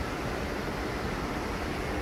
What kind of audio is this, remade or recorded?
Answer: recorded